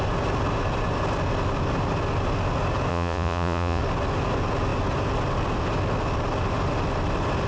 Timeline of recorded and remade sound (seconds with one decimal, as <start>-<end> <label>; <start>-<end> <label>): 0.0-2.9 recorded; 2.9-3.8 remade; 3.8-7.5 recorded